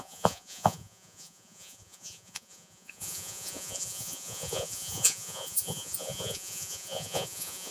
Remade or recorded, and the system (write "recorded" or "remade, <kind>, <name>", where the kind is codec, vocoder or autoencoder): remade, vocoder, Vocos